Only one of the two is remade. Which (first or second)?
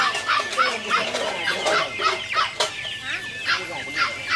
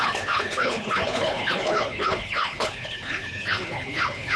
second